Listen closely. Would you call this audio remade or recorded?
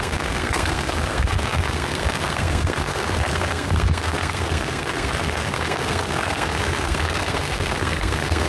remade